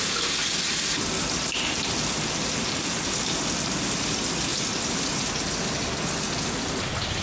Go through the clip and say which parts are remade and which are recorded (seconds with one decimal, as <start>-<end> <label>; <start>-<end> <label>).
0.0-7.2 recorded